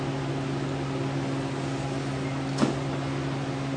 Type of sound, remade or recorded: recorded